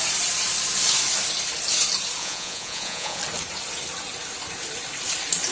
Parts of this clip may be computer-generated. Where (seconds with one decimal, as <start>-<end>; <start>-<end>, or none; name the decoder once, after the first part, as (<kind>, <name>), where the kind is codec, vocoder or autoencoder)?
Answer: 2.2-3.2 (vocoder, Vocos)

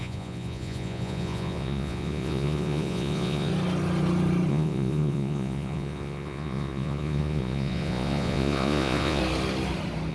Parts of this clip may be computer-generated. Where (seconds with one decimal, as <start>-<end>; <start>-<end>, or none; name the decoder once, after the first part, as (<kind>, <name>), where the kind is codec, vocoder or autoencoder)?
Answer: 0.0-3.5 (vocoder, Vocos); 4.5-9.2